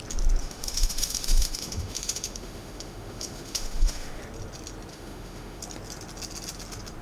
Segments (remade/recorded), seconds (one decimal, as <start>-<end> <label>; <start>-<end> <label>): 0.0-0.4 recorded; 0.4-4.2 remade; 4.2-4.9 recorded; 4.9-5.6 remade; 5.6-7.0 recorded